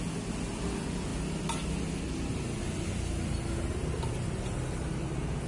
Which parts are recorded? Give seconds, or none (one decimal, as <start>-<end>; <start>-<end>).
0.0-5.5